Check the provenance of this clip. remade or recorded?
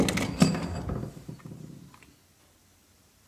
recorded